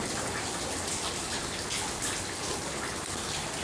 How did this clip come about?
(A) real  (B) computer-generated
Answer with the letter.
A